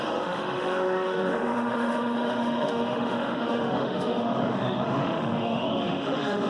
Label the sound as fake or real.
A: fake